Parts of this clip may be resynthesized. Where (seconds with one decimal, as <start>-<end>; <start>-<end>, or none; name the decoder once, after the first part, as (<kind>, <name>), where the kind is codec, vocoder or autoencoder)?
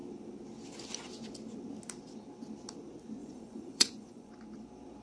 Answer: 3.2-4.3 (vocoder, Vocos)